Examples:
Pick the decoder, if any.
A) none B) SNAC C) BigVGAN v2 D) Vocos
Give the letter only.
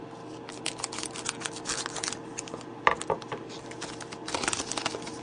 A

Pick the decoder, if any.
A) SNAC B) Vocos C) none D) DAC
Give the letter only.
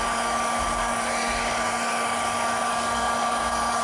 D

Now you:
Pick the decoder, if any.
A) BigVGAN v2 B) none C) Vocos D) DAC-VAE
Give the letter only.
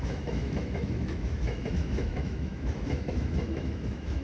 D